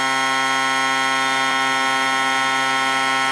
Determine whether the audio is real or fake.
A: real